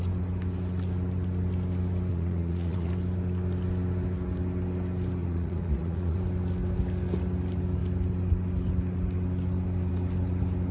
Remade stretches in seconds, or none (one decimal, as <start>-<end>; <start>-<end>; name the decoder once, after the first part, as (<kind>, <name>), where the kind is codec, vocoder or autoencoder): 2.1-2.9 (vocoder, Vocos); 5.2-6.2